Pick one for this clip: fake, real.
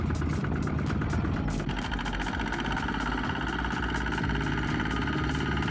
real